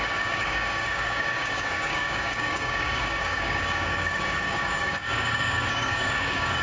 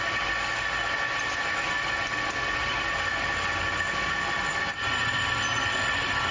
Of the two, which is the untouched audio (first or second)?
second